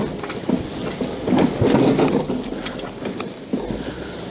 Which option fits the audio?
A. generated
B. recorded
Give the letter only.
B